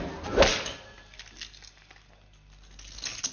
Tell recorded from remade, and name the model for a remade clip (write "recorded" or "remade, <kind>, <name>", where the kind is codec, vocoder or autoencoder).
recorded